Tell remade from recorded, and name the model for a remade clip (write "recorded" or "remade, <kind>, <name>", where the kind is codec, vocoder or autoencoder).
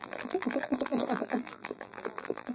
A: remade, vocoder, BigVGAN v2